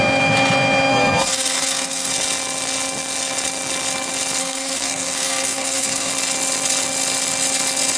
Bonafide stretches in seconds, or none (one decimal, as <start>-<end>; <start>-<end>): 0.0-0.9; 2.1-4.4; 6.1-8.0